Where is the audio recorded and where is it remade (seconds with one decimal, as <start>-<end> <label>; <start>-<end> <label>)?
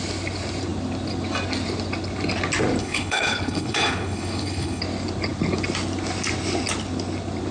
0.0-2.8 recorded; 2.8-4.8 remade; 4.8-7.5 recorded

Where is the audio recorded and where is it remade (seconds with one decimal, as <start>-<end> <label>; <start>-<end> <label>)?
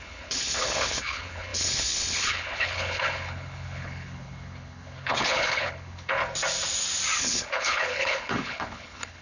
0.0-6.2 remade; 6.2-7.2 recorded; 7.2-9.2 remade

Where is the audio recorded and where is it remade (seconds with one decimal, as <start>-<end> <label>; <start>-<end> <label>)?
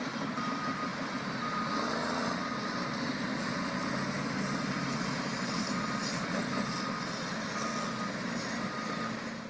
0.0-9.5 recorded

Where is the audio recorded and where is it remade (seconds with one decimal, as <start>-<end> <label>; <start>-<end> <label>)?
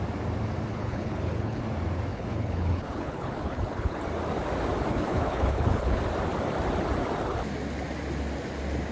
0.0-0.7 recorded; 0.7-1.6 remade; 1.6-2.1 recorded; 2.1-4.0 remade; 4.0-4.9 recorded; 4.9-6.0 remade; 6.0-8.9 recorded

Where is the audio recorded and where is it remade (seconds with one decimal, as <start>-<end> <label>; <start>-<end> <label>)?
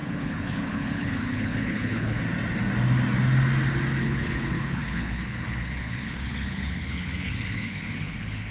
0.0-2.2 remade; 2.2-4.0 recorded; 4.0-8.5 remade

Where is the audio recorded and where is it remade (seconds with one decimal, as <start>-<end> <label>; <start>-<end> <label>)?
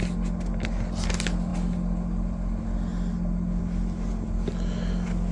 0.0-5.3 recorded